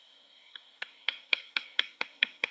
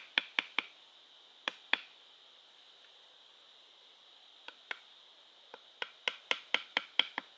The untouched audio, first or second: second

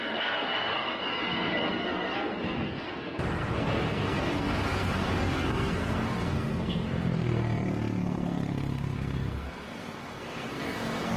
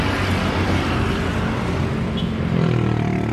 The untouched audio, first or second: second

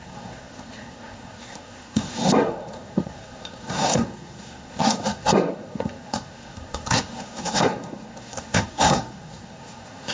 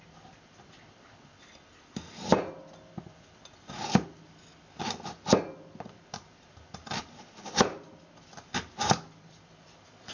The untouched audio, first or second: second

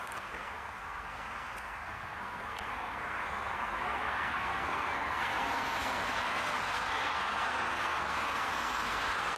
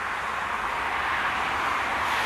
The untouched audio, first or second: second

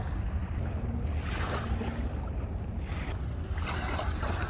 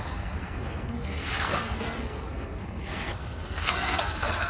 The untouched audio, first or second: first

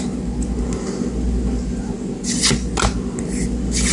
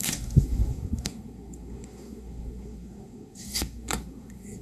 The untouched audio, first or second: first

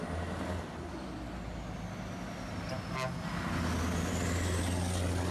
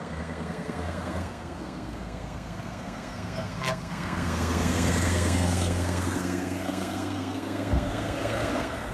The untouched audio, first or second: first